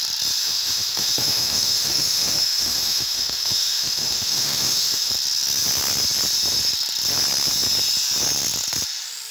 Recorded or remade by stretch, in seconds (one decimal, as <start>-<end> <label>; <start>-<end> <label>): 0.0-0.4 recorded; 0.4-5.1 remade; 5.1-9.3 recorded